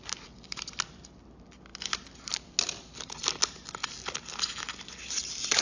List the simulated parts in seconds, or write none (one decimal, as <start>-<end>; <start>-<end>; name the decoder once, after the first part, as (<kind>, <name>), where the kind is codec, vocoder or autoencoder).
none